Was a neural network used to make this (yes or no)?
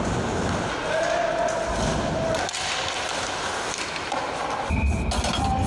no